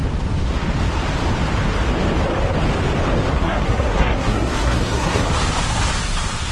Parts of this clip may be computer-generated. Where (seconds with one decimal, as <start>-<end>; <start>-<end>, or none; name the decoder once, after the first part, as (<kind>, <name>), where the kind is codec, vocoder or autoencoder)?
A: 3.3-5.3 (codec, SNAC)